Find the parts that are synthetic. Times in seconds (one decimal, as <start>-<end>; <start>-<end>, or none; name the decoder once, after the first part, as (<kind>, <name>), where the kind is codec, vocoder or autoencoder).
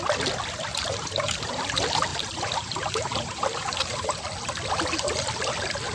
0.7-1.6 (vocoder, BigVGAN v2); 2.1-4.2